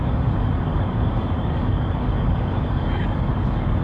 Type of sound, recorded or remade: remade